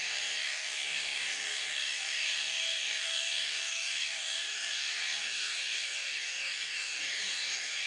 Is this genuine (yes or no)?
no